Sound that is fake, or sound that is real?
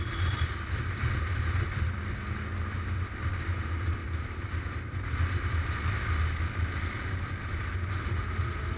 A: real